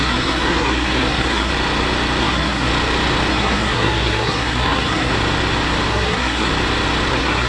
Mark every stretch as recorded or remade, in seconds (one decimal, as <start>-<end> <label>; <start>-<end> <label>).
0.0-1.5 remade; 1.5-2.2 recorded; 2.2-2.7 remade; 2.7-3.3 recorded; 3.3-5.1 remade; 5.1-5.9 recorded; 5.9-6.5 remade; 6.5-7.1 recorded; 7.1-7.5 remade